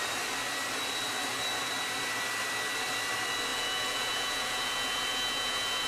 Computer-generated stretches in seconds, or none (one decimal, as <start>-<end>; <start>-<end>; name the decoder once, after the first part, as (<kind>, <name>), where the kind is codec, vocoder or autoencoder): 3.5-5.9 (vocoder, Vocos)